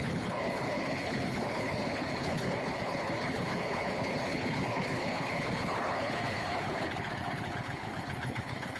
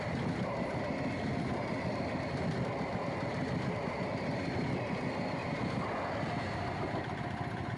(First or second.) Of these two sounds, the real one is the second